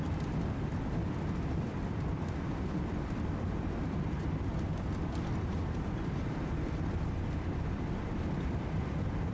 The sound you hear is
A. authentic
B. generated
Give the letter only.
B